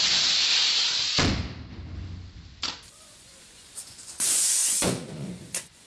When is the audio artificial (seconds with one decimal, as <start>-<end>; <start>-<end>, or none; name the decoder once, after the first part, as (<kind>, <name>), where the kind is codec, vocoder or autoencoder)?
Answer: 0.0-0.5 (vocoder, Vocos); 2.9-5.9